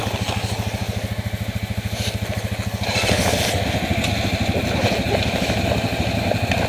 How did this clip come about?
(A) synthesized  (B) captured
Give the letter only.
B